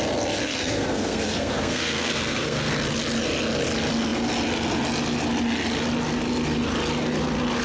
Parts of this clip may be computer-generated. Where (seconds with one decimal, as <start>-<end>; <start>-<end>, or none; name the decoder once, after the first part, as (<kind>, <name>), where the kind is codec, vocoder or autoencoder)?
0.4-2.7 (codec, SNAC)